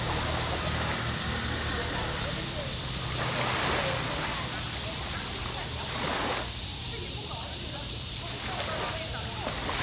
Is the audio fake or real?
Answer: real